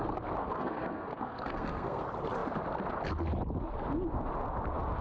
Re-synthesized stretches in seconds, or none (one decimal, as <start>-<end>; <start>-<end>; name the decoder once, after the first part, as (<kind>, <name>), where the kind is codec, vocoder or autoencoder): 0.4-2.0 (codec, SNAC)